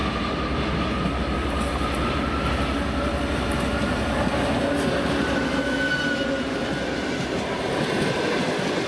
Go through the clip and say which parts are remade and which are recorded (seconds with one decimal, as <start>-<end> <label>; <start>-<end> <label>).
0.0-8.9 recorded